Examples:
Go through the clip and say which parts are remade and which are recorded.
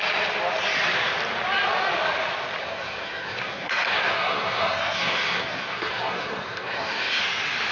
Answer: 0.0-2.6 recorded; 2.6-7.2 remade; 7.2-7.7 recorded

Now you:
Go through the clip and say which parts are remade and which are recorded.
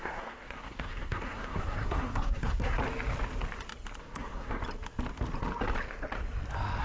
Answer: 0.0-2.8 remade; 2.8-4.0 recorded; 4.0-4.6 remade; 4.6-6.8 recorded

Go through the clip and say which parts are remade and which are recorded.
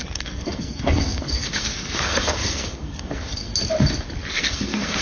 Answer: 0.0-3.5 remade; 3.5-4.3 recorded; 4.3-5.0 remade